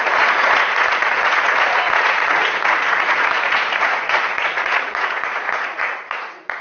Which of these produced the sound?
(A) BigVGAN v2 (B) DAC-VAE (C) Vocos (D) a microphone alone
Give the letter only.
C